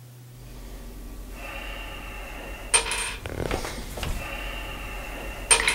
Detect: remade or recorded recorded